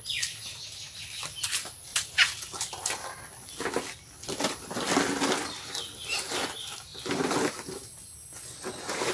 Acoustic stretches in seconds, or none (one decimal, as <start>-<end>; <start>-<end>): 0.0-1.9; 4.6-6.9; 8.2-9.1